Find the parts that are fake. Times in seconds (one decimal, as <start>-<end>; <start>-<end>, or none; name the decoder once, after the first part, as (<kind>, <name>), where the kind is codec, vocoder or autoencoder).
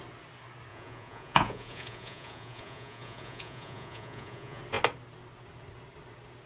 0.7-4.6 (vocoder, Vocos)